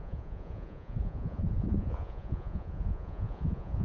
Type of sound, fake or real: fake